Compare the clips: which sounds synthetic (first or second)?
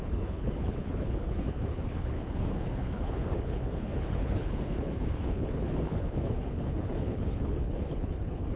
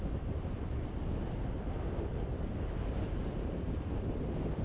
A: first